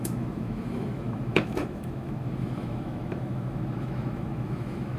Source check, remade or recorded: remade